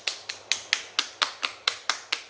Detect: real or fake real